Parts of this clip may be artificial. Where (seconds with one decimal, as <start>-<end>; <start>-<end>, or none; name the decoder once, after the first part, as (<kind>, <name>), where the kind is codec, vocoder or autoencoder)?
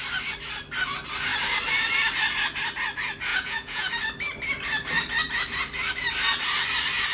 3.3-3.9 (vocoder, Vocos)